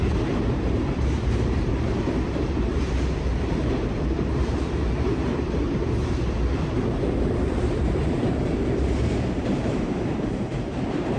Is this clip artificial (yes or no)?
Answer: yes